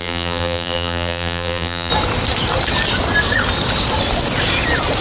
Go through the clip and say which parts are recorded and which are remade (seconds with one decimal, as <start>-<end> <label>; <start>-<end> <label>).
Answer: 0.0-1.9 remade; 1.9-5.0 recorded